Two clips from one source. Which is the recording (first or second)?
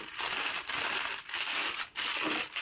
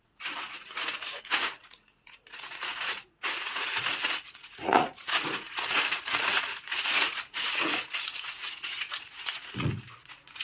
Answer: first